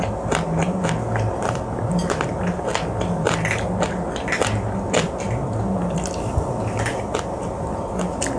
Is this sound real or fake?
real